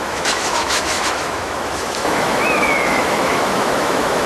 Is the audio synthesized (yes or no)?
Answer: yes